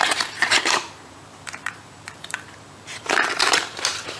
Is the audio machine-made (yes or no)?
yes